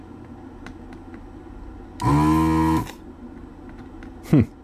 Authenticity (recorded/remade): recorded